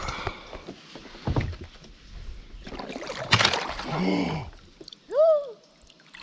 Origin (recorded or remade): recorded